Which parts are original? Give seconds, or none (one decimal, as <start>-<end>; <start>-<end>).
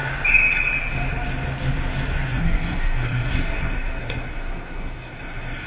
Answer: 0.0-2.3